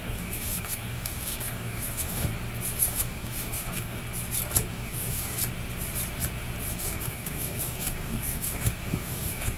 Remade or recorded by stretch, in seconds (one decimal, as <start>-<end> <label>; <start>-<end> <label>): 0.0-2.3 remade; 2.3-2.8 recorded; 2.8-4.0 remade; 4.0-4.7 recorded; 4.7-5.4 remade; 5.4-6.7 recorded; 6.7-9.6 remade